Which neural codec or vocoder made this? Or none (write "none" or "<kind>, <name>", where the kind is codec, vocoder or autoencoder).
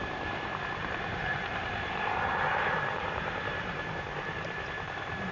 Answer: vocoder, BigVGAN v2